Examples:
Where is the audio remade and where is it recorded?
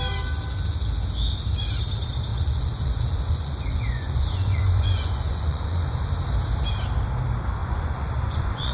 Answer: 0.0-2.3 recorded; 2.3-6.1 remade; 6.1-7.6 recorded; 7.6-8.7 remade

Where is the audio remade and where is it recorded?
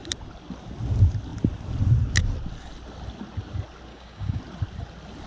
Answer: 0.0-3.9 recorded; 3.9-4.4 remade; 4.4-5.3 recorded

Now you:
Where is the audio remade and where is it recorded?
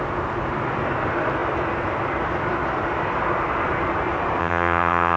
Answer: 0.0-4.4 recorded; 4.4-5.2 remade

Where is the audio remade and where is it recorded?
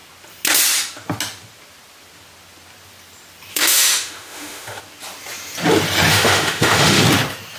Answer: 0.0-3.5 recorded; 3.5-4.8 remade; 4.8-6.1 recorded; 6.1-7.0 remade; 7.0-7.6 recorded